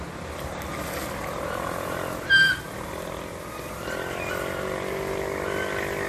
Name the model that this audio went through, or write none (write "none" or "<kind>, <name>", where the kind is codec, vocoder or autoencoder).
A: none